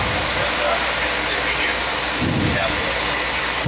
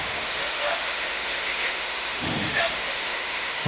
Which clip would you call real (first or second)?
first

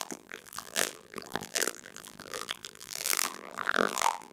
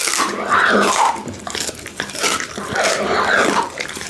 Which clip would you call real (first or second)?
second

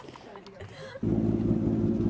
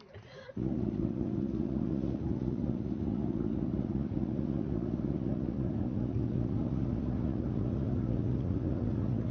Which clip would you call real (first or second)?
first